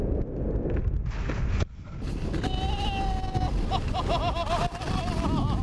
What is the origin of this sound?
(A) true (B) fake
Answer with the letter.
A